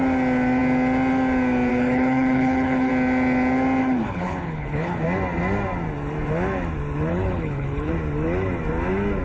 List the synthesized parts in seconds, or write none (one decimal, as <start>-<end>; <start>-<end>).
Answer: 1.7-2.9; 3.8-5.0; 7.1-7.9